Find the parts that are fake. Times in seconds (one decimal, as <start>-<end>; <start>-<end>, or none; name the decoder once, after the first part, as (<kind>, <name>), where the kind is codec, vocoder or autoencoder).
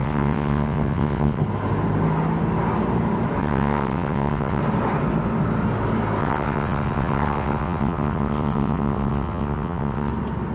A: 0.0-1.4 (vocoder, WaveNeXt); 3.4-4.6; 6.2-10.1